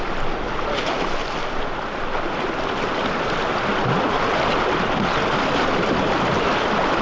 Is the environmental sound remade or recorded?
recorded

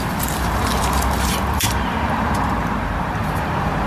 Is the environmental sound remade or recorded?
remade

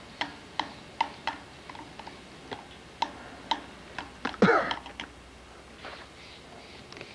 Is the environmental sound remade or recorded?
recorded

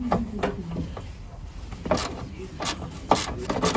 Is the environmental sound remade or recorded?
recorded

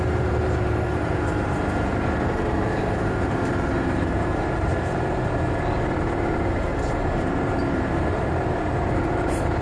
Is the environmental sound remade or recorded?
remade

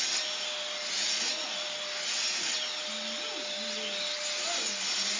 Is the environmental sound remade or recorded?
recorded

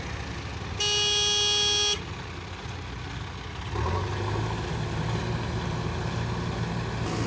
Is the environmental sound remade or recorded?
recorded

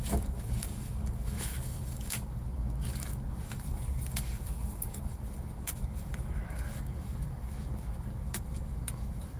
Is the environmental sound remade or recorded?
remade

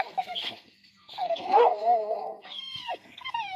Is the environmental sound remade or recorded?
remade